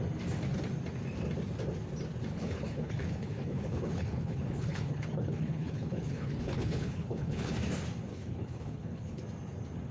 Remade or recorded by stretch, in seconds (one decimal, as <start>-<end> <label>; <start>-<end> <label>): 0.0-2.3 recorded; 2.3-7.5 remade; 7.5-8.1 recorded; 8.1-9.2 remade; 9.2-9.9 recorded